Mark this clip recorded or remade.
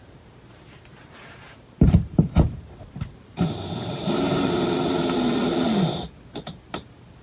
remade